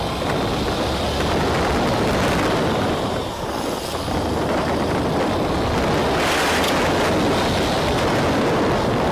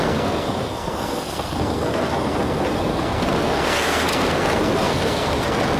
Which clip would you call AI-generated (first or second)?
second